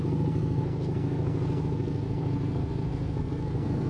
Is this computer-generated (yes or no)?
yes